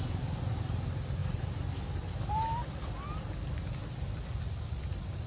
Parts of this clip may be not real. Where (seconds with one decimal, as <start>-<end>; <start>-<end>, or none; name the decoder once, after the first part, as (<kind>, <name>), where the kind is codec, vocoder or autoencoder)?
none